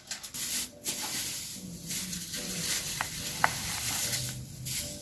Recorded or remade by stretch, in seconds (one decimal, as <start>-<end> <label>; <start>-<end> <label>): 0.0-5.0 remade